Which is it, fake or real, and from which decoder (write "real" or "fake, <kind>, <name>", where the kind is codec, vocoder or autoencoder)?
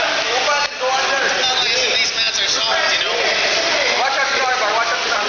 real